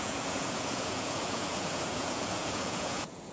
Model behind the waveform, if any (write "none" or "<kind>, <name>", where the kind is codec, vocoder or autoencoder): vocoder, Vocos